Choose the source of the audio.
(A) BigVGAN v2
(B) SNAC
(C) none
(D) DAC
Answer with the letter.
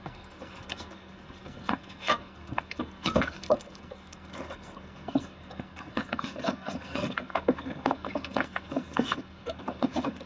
B